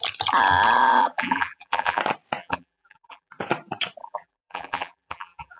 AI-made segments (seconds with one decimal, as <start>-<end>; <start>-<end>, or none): 1.0-2.0; 2.4-3.3; 4.0-5.6